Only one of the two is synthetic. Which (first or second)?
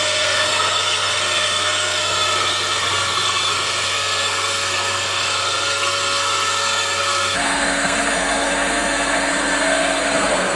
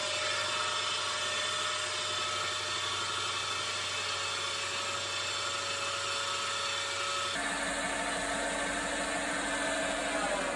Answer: first